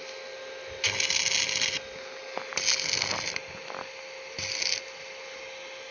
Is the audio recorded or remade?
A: recorded